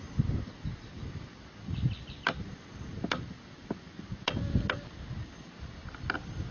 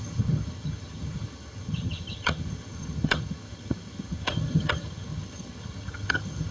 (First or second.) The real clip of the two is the first